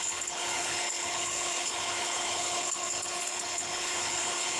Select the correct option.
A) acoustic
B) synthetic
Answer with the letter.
B